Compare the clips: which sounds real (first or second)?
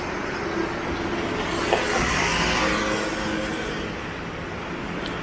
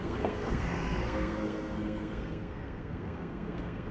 first